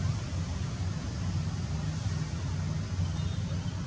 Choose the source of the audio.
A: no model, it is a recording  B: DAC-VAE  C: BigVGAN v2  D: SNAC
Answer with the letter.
A